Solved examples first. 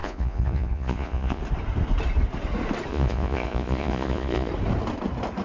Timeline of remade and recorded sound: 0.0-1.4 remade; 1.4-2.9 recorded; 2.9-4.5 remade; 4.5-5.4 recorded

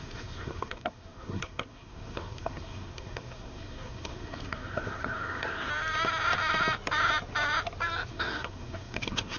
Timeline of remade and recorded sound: 0.0-5.7 remade; 5.7-8.1 recorded; 8.1-9.4 remade

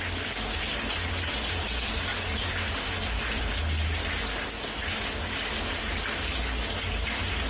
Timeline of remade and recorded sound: 0.0-7.5 recorded